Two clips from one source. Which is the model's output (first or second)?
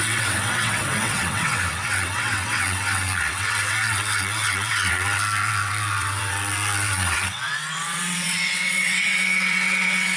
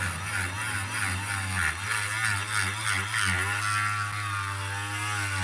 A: first